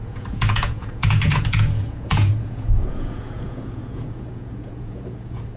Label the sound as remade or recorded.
remade